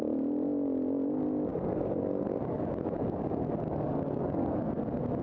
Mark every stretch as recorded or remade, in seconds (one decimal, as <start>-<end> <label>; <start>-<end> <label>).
0.0-1.5 recorded; 1.5-4.6 remade; 4.6-5.2 recorded